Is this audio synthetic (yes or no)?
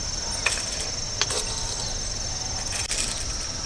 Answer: no